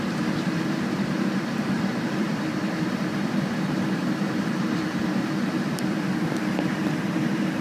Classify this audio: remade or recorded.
remade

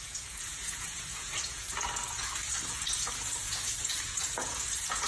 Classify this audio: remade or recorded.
remade